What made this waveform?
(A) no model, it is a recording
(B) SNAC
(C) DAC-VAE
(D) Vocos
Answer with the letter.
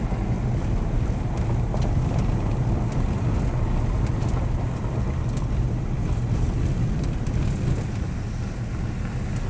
A